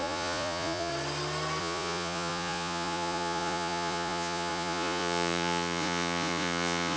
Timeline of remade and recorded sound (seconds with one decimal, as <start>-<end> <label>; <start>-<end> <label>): 0.0-0.9 remade; 0.9-1.6 recorded; 1.6-7.0 remade